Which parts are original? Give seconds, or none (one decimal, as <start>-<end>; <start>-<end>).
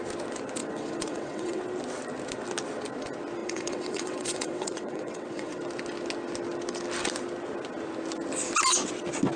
0.0-0.6; 1.6-3.4; 5.6-9.4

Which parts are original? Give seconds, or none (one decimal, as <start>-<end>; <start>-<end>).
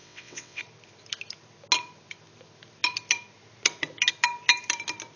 0.6-5.2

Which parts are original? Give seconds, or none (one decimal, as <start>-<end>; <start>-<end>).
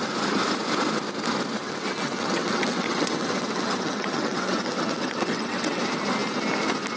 0.0-1.6; 5.8-7.0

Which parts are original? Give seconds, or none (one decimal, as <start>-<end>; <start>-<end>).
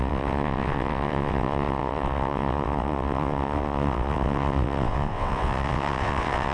none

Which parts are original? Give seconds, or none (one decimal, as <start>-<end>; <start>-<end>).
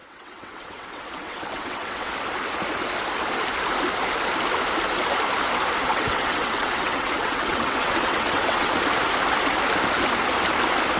2.1-5.8; 8.7-11.0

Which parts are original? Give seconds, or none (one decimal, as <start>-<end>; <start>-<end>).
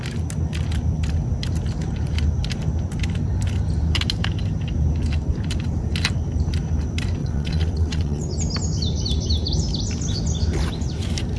0.0-7.2; 8.3-11.4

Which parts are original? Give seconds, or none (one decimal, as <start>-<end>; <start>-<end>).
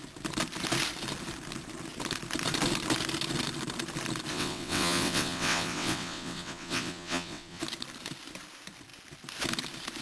0.0-4.3; 7.6-10.0